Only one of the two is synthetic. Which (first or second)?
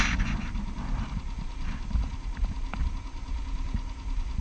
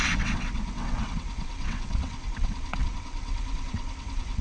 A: second